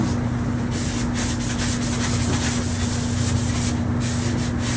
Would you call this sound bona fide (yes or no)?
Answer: yes